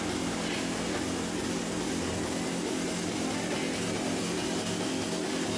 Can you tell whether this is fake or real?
real